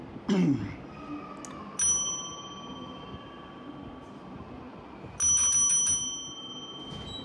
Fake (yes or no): no